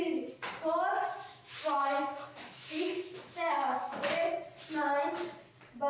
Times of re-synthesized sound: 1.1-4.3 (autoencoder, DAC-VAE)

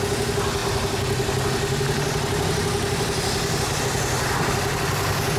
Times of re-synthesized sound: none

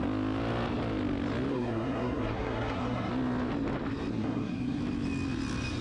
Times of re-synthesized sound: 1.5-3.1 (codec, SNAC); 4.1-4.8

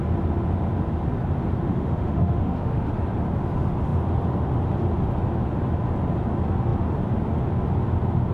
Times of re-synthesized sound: 1.7-2.9 (autoencoder, DAC-VAE)

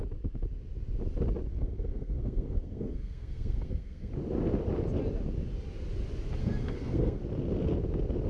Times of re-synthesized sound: 1.5-4.1 (codec, SNAC); 6.4-7.2

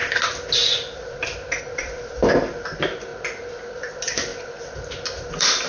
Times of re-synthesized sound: 1.6-3.1 (vocoder, BigVGAN v2); 3.7-4.3; 5.2-5.7

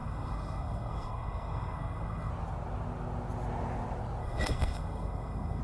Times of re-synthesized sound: 0.0-2.3 (codec, SNAC); 4.2-5.6

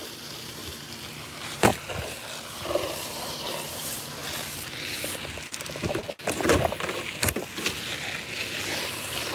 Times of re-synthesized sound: 0.0-1.7 (vocoder, BigVGAN v2); 2.7-4.2; 8.6-9.3